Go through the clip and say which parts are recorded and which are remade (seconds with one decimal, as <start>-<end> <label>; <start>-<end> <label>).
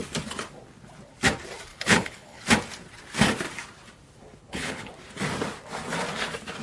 0.0-1.7 recorded; 1.7-2.4 remade; 2.4-4.4 recorded; 4.4-4.9 remade; 4.9-6.6 recorded